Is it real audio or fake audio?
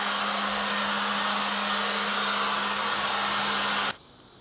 real